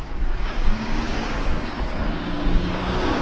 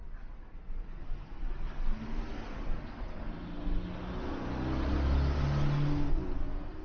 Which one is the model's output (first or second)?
first